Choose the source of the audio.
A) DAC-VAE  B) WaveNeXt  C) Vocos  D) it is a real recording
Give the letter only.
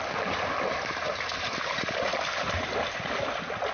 D